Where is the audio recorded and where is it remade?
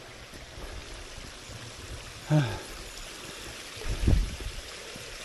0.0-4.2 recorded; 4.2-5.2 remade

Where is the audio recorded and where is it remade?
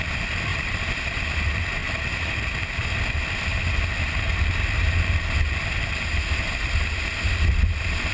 0.0-0.5 recorded; 0.5-1.2 remade; 1.2-8.1 recorded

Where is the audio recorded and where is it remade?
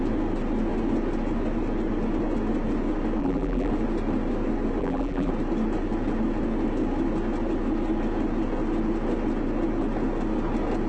0.0-3.2 recorded; 3.2-3.7 remade; 3.7-4.8 recorded; 4.8-5.3 remade; 5.3-10.9 recorded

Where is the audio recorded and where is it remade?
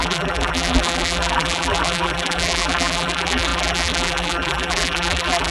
0.0-5.5 remade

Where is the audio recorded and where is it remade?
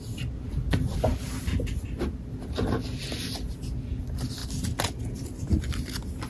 0.0-6.3 recorded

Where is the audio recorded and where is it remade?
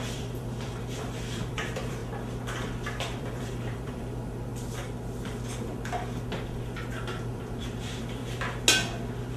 0.0-2.0 remade; 2.0-3.2 recorded; 3.2-4.5 remade; 4.5-7.0 recorded; 7.0-8.2 remade; 8.2-9.4 recorded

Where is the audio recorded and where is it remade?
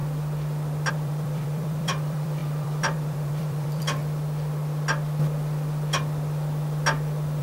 0.0-0.9 recorded; 0.9-4.0 remade; 4.0-7.4 recorded